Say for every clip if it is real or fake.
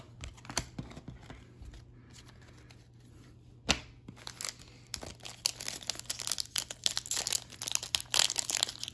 real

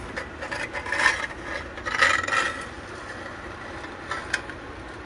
real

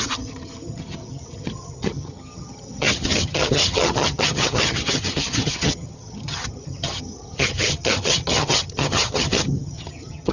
fake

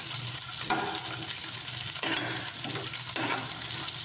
real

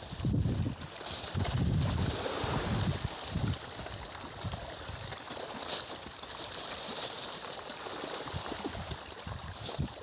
real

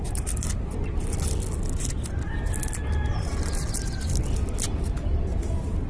real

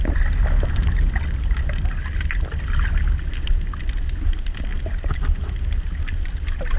real